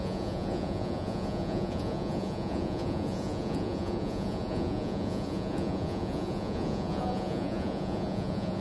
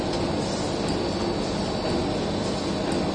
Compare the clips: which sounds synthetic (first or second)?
first